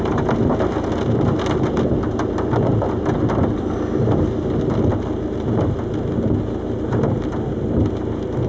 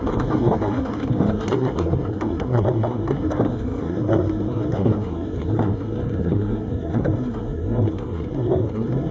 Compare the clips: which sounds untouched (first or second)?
first